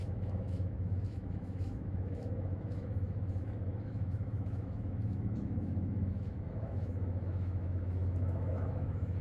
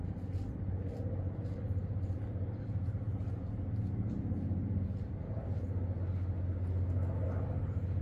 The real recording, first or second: second